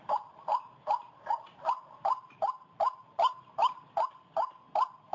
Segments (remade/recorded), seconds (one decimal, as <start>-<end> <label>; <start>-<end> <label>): 0.0-5.1 recorded